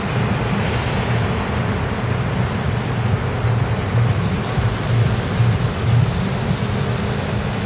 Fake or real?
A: real